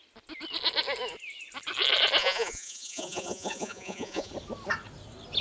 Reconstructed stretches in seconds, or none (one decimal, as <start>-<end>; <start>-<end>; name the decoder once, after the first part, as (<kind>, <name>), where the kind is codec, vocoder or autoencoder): 2.2-4.3 (vocoder, Vocos)